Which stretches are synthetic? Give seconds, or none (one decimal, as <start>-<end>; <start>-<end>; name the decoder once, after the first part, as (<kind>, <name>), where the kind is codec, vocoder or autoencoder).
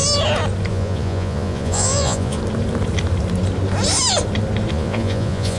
0.7-2.4 (vocoder, Vocos); 4.7-5.6